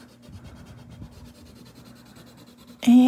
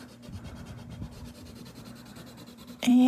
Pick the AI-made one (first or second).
second